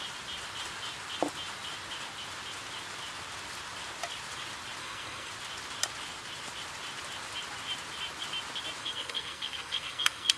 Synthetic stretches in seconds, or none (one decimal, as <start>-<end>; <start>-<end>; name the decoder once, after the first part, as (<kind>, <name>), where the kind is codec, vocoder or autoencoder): 4.8-5.3 (codec, SNAC); 8.8-10.4